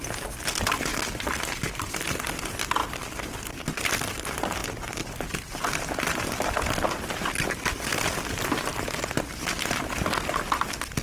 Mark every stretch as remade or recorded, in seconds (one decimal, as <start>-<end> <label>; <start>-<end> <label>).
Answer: 0.0-0.9 recorded; 0.9-2.3 remade; 2.3-2.8 recorded; 2.8-3.8 remade; 3.8-4.6 recorded; 4.6-5.7 remade; 5.7-11.0 recorded